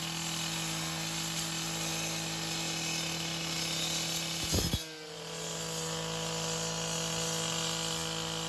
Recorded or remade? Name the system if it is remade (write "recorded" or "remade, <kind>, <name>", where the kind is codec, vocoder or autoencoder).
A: recorded